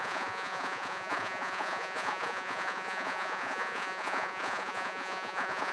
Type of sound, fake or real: fake